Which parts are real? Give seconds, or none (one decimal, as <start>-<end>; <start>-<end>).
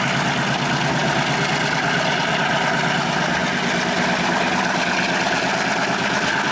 0.0-6.5